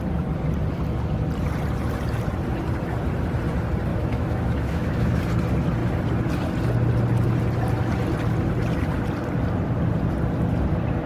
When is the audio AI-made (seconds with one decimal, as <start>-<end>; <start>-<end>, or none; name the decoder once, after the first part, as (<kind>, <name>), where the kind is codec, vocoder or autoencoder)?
3.9-5.2 (autoencoder, DAC-VAE)